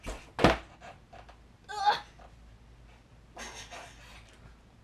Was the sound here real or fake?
real